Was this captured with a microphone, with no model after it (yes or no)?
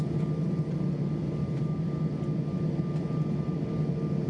yes